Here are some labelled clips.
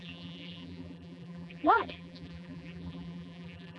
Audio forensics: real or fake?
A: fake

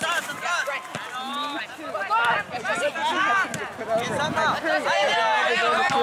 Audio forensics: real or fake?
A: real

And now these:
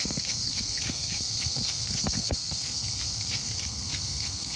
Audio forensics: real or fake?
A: fake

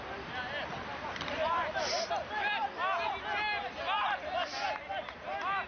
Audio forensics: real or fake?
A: real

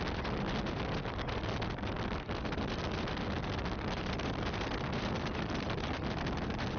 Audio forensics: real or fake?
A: real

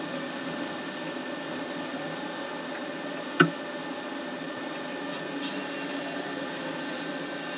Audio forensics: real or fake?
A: real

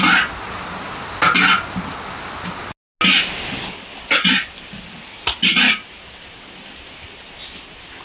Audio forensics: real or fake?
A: real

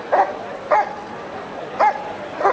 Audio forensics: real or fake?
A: real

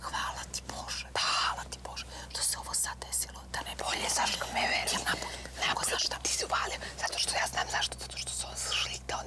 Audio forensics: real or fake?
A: real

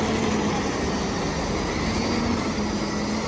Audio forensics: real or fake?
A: real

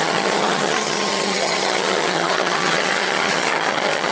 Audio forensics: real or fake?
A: fake